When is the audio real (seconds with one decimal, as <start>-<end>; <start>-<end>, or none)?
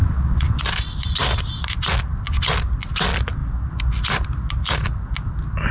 0.6-5.7